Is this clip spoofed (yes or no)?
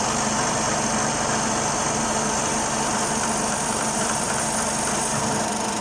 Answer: yes